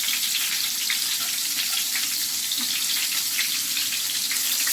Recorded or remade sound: recorded